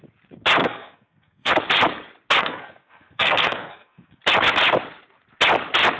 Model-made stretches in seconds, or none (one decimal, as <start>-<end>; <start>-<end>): 0.6-1.5; 2.4-4.2

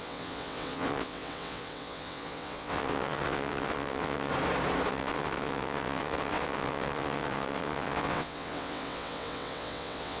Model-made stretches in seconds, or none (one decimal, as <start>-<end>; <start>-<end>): 0.0-4.3; 4.9-10.2

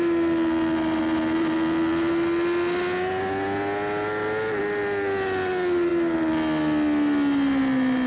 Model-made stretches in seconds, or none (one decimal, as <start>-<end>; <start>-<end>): none

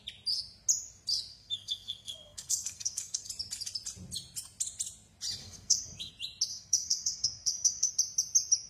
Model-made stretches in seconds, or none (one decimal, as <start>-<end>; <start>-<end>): 1.3-3.3; 5.4-6.1; 6.5-7.9

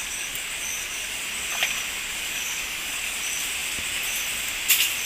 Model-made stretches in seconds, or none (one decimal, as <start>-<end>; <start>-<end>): 0.0-1.3; 2.1-3.2